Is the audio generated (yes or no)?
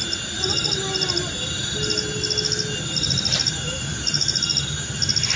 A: no